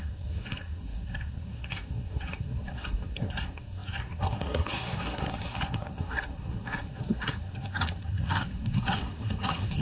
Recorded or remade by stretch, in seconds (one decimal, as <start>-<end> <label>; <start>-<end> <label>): 0.0-9.8 remade